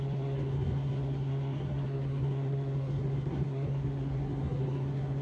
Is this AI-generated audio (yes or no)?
yes